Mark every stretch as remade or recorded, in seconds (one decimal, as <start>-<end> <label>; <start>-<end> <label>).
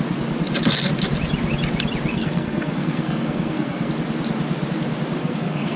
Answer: 0.0-2.1 recorded; 2.1-3.9 remade; 3.9-5.2 recorded; 5.2-5.8 remade